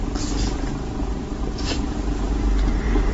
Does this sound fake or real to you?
fake